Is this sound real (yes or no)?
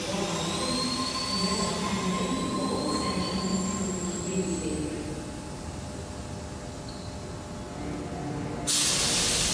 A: yes